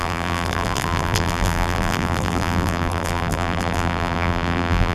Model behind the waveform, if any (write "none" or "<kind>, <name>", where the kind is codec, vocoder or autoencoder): vocoder, BigVGAN v2